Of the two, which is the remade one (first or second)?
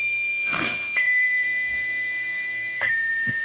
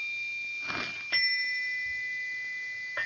first